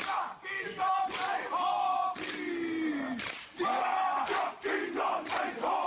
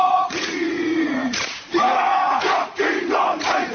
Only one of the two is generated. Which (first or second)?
second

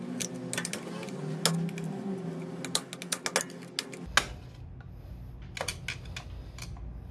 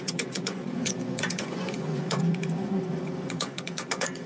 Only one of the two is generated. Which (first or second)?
second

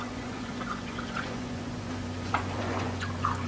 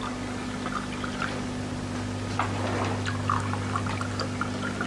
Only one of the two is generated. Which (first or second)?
first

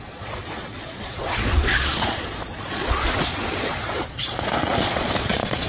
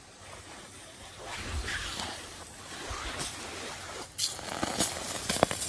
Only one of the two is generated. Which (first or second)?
first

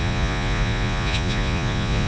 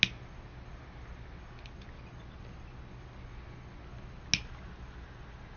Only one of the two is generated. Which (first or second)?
first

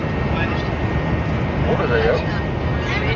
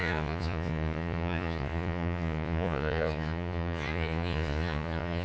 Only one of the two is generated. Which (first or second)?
second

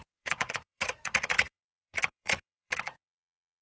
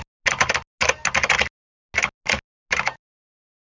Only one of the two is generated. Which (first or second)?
first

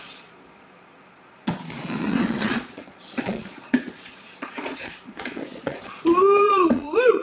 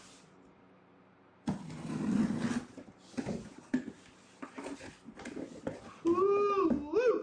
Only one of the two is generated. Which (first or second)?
first